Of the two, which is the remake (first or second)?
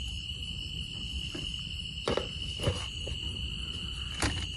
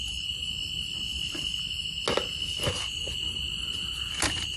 first